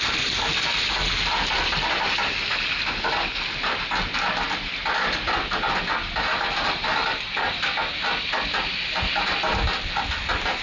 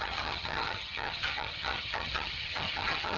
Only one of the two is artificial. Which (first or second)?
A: second